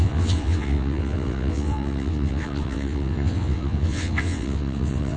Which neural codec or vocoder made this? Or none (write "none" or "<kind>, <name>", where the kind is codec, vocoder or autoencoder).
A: vocoder, WaveNeXt